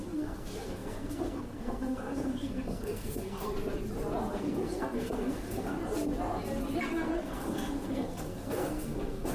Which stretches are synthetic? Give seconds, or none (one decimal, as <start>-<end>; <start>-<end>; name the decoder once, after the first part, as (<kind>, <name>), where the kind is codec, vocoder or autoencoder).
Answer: 0.0-3.5 (codec, SNAC); 4.3-5.8; 6.8-9.3